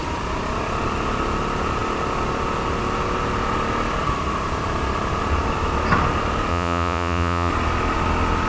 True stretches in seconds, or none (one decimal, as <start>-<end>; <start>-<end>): 0.0-6.5; 7.5-8.5